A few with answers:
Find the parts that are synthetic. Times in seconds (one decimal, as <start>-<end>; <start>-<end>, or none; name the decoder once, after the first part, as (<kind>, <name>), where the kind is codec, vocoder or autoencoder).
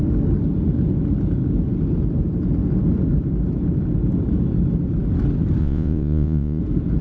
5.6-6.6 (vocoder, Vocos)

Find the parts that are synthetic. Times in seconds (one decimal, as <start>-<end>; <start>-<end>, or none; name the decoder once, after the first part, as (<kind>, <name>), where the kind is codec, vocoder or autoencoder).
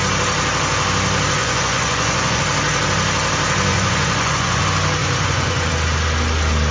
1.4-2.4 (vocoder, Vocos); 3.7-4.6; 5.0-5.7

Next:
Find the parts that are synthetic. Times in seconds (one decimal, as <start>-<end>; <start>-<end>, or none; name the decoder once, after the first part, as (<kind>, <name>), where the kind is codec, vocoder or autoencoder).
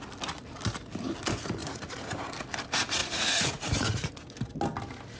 1.6-2.3 (vocoder, Vocos); 3.0-4.1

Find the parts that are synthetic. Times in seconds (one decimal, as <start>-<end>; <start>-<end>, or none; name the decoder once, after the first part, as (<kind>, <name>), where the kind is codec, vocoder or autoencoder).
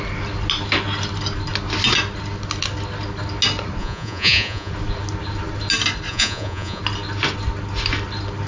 3.8-4.7 (vocoder, Vocos); 6.1-6.8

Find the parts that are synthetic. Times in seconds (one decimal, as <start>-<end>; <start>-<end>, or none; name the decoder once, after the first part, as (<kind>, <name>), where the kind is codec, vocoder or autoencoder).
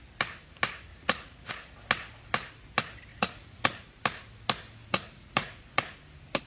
0.9-1.5 (vocoder, Vocos); 3.1-4.0; 4.8-5.8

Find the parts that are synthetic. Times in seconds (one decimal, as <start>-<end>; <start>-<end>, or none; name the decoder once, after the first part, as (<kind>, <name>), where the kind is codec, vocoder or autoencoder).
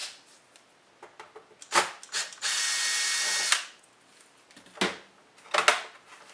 none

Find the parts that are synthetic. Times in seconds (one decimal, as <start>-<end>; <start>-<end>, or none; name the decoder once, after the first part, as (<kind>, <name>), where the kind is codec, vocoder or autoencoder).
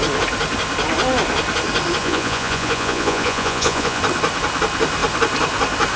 2.0-4.0 (vocoder, Vocos)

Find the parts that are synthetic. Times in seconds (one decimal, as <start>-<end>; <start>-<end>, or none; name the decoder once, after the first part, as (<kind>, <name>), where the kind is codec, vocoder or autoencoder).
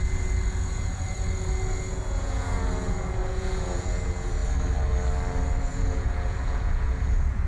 0.0-4.4 (vocoder, Vocos); 5.6-7.5